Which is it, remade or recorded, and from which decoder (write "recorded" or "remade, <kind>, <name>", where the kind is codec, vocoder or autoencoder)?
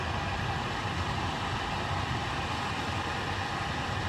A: recorded